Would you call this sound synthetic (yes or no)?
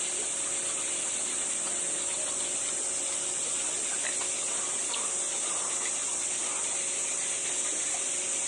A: no